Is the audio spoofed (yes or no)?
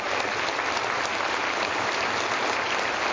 no